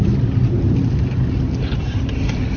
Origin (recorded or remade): recorded